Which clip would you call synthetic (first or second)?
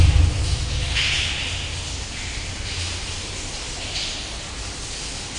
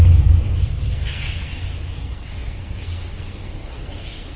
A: second